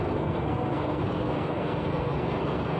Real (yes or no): no